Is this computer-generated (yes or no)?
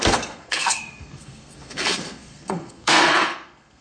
yes